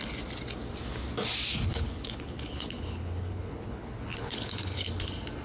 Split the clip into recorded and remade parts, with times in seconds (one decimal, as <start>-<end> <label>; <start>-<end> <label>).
0.0-1.7 recorded; 1.7-4.9 remade; 4.9-5.4 recorded